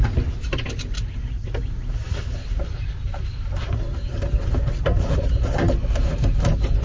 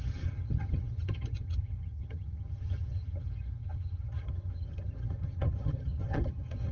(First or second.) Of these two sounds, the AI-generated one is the second